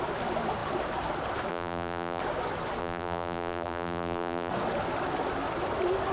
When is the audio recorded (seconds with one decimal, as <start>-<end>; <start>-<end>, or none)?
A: 0.0-1.5; 2.2-2.8; 4.5-6.1